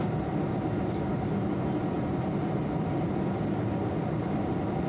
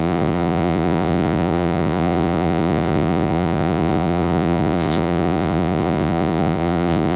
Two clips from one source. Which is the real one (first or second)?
first